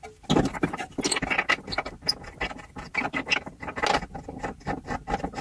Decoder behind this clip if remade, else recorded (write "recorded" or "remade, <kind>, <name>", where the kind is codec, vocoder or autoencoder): recorded